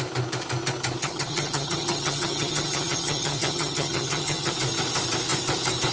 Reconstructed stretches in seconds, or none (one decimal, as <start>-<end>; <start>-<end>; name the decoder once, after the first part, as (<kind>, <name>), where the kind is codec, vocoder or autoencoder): 1.0-4.5 (vocoder, HiFi-GAN)